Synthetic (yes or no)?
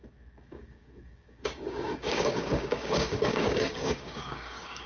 yes